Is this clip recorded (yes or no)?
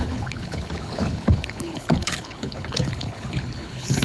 no